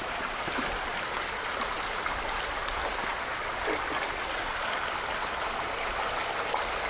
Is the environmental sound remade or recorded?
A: recorded